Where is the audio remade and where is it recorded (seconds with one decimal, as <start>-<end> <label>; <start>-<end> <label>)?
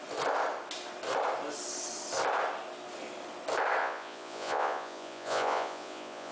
0.0-3.8 recorded; 3.8-6.3 remade